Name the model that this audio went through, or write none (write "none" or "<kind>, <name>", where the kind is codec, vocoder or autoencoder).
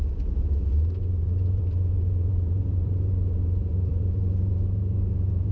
vocoder, BigVGAN v2